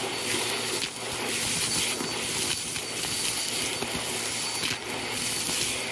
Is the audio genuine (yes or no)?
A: yes